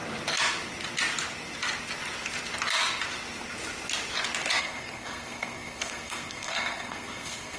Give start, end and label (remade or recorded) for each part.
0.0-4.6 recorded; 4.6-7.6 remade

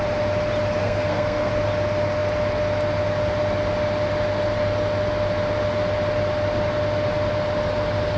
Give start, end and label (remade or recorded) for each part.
0.0-0.8 recorded; 0.8-1.5 remade; 1.5-8.2 recorded

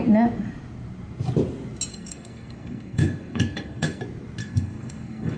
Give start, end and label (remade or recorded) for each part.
0.0-1.9 recorded; 1.9-4.0 remade; 4.0-4.4 recorded; 4.4-5.4 remade

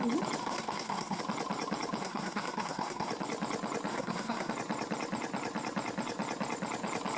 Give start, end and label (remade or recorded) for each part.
0.0-0.4 recorded; 0.4-1.2 remade; 1.2-2.0 recorded; 2.0-3.1 remade; 3.1-3.9 recorded; 3.9-4.5 remade; 4.5-7.2 recorded